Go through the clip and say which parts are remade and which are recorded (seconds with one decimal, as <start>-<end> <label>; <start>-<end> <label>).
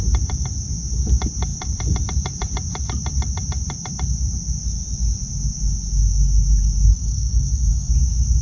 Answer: 0.0-6.9 recorded; 6.9-7.9 remade; 7.9-8.4 recorded